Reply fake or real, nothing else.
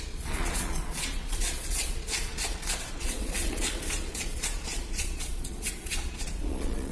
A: fake